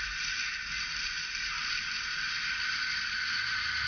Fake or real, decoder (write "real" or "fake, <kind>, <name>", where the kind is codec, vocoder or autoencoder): real